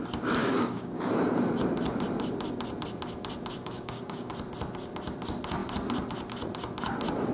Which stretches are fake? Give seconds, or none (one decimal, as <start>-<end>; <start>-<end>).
0.4-1.1; 3.6-4.3